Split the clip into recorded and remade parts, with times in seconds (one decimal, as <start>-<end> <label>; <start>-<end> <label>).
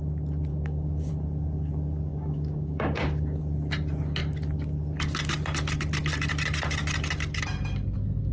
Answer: 0.0-0.5 recorded; 0.5-1.1 remade; 1.1-2.1 recorded; 2.1-3.4 remade; 3.4-8.3 recorded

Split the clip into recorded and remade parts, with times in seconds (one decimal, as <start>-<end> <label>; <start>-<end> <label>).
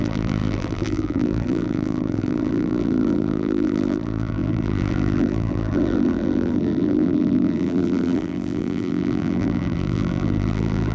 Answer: 0.0-10.9 remade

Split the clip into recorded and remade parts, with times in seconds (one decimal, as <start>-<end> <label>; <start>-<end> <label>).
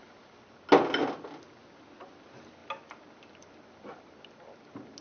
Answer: 0.0-5.0 recorded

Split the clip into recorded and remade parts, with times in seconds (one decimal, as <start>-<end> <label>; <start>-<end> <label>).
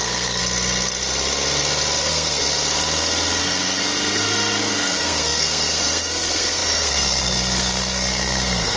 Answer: 0.0-0.4 remade; 0.4-2.0 recorded; 2.0-2.4 remade; 2.4-3.4 recorded; 3.4-8.8 remade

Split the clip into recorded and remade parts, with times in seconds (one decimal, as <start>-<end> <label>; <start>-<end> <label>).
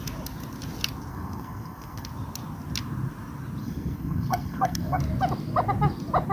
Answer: 0.0-1.1 recorded; 1.1-2.1 remade; 2.1-3.6 recorded; 3.6-5.0 remade; 5.0-6.3 recorded